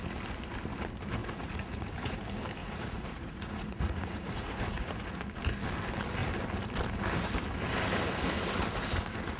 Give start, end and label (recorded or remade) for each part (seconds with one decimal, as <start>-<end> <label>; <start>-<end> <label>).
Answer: 0.0-1.2 recorded; 1.2-2.2 remade; 2.2-2.6 recorded; 2.6-5.2 remade; 5.2-9.4 recorded